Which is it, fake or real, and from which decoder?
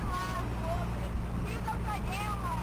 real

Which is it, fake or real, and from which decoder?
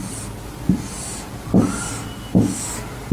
real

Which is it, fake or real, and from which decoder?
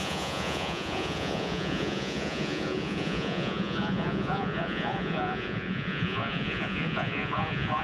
fake, vocoder, Vocos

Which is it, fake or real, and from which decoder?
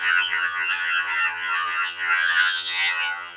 fake, vocoder, HiFi-GAN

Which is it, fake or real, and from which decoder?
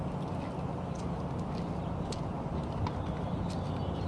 real